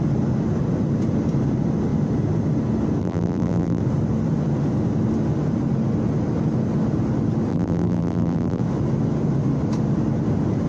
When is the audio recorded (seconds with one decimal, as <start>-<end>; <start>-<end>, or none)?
0.0-3.0; 3.8-7.5; 8.6-10.7